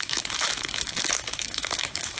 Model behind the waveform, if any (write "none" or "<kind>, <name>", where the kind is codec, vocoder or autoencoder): autoencoder, DAC-VAE